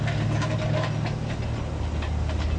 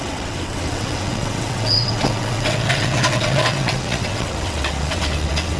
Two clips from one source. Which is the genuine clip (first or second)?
first